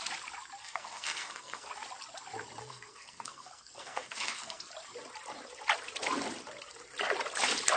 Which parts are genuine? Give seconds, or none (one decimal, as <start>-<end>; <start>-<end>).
0.0-0.6; 1.7-2.6; 4.7-7.8